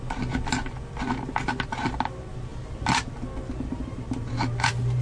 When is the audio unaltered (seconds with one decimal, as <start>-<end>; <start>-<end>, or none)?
0.0-5.0